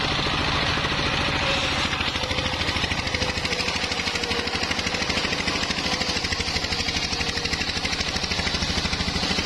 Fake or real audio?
real